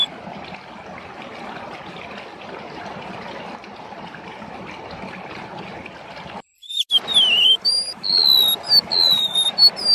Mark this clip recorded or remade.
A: recorded